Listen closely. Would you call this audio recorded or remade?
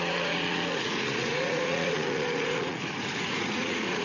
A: remade